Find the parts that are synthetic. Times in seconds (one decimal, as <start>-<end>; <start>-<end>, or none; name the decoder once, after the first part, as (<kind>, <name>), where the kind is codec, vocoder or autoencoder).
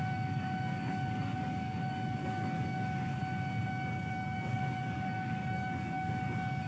0.0-3.1 (codec, DAC); 3.7-6.7